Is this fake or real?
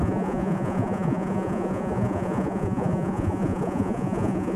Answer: fake